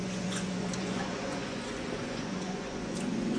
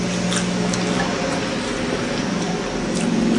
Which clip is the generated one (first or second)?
first